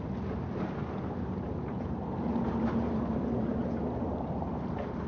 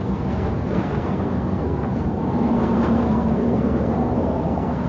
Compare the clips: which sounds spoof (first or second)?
second